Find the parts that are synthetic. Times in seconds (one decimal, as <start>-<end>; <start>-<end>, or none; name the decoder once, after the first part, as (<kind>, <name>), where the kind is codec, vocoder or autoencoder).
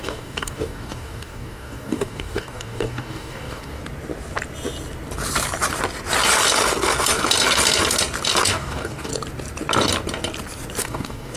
0.0-3.8 (codec, DAC); 8.5-9.1; 10.8-11.4